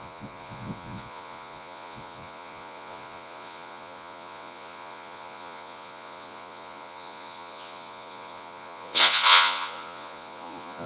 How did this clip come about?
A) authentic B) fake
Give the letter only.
B